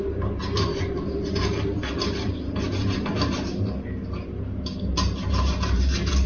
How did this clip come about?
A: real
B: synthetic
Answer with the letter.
B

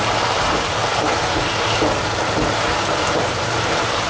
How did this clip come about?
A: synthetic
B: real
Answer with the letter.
A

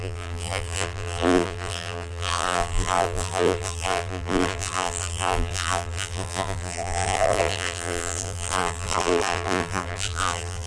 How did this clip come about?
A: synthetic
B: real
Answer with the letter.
A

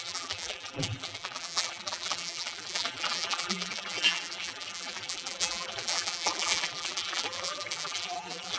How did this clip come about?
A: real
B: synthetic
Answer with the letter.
B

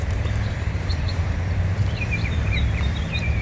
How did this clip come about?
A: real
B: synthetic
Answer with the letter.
B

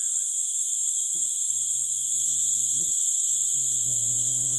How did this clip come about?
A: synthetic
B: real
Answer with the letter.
B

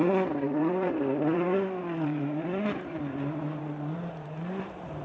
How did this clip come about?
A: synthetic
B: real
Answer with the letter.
A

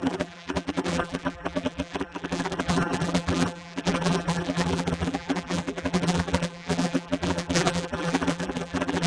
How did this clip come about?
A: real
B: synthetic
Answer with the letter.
B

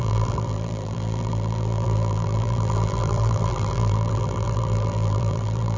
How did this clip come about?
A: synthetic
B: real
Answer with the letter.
A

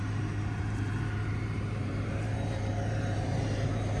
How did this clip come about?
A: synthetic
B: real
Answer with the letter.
A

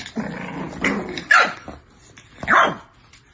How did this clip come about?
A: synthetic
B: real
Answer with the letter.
B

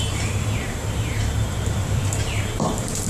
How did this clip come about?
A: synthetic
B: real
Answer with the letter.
A